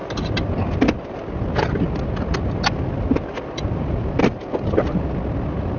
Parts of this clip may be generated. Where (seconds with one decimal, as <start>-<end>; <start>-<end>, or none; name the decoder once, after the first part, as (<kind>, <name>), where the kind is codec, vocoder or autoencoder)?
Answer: none

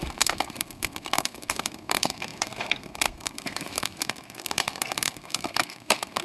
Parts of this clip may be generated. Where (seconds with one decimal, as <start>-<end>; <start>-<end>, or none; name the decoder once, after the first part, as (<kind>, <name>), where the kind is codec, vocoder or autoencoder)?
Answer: 0.0-6.2 (codec, SNAC)

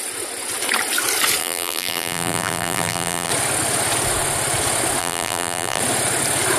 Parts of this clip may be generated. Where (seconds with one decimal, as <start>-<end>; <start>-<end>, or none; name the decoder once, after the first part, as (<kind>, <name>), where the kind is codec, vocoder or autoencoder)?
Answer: 1.4-3.3 (vocoder, BigVGAN v2); 5.0-5.8